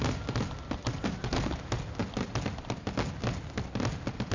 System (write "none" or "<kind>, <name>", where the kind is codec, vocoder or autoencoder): none